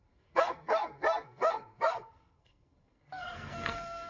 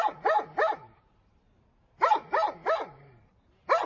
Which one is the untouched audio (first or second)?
second